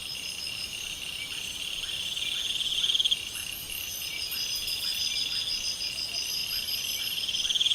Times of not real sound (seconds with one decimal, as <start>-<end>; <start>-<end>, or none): none